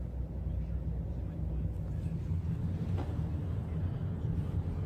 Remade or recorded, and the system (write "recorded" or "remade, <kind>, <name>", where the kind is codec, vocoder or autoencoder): recorded